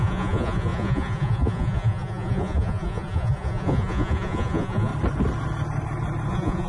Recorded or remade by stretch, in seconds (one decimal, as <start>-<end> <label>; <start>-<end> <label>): 0.0-4.9 remade; 4.9-6.3 recorded; 6.3-6.7 remade